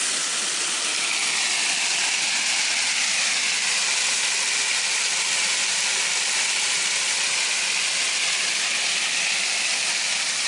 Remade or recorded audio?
recorded